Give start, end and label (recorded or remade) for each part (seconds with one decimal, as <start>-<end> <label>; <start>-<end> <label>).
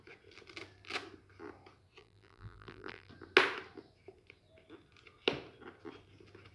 0.0-2.0 recorded; 2.0-3.1 remade; 3.1-6.5 recorded